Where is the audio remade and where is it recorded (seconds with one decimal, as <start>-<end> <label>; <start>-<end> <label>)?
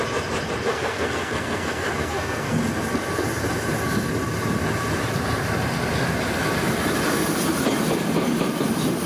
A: 0.0-0.7 recorded; 0.7-2.6 remade; 2.6-9.1 recorded